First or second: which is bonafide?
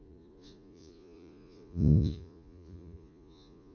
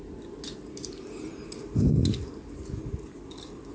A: second